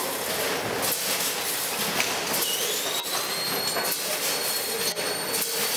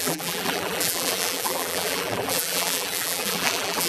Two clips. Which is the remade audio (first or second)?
second